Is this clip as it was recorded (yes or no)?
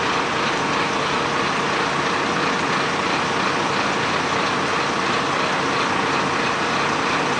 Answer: yes